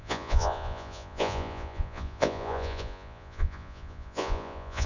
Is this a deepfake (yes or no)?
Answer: yes